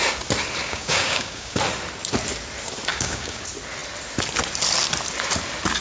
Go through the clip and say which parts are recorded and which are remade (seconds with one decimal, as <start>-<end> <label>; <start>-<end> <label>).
0.0-0.6 recorded; 0.6-1.6 remade; 1.6-2.9 recorded; 2.9-3.4 remade; 3.4-5.8 recorded